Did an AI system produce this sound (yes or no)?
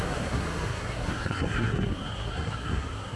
yes